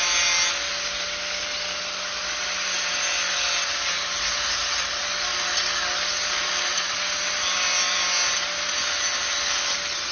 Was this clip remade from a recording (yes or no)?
no